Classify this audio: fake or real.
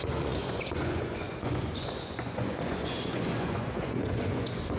fake